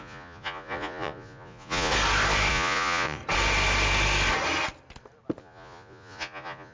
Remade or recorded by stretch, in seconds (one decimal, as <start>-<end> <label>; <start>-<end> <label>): 0.0-1.9 remade; 1.9-2.5 recorded; 2.5-3.2 remade; 3.2-5.4 recorded; 5.4-6.7 remade